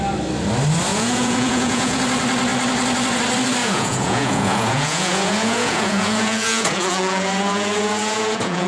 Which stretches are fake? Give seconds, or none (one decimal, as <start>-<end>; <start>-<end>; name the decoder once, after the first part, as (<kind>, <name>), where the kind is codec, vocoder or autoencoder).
0.9-2.0 (vocoder, Vocos); 3.6-8.7